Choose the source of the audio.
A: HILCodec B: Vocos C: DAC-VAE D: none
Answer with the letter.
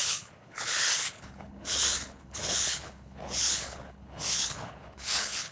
A